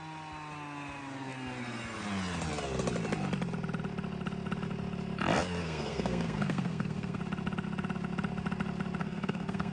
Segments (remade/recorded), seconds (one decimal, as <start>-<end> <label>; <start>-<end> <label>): 0.0-5.6 recorded; 5.6-7.2 remade; 7.2-9.0 recorded; 9.0-9.7 remade